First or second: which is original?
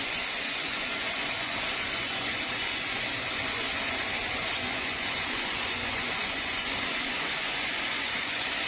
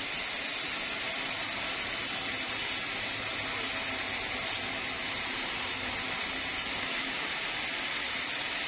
second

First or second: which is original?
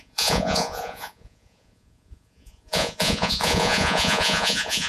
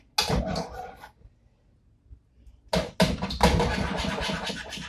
second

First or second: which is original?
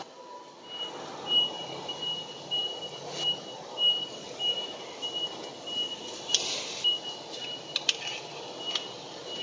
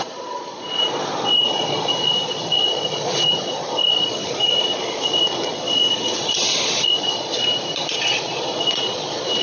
first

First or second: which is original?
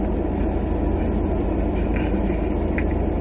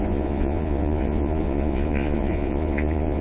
first